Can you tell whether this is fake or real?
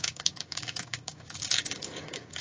fake